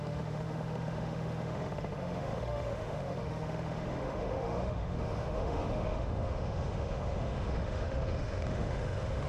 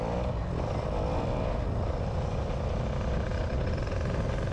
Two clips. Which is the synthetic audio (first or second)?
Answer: first